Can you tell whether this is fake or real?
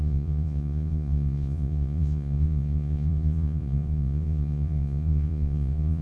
fake